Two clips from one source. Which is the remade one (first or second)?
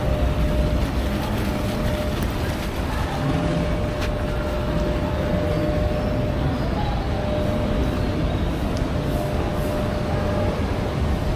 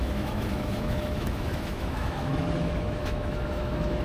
second